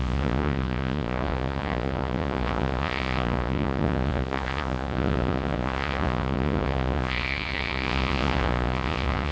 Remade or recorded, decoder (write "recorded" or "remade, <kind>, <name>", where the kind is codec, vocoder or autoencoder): remade, vocoder, Vocos